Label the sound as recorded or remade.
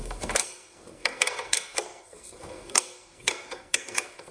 remade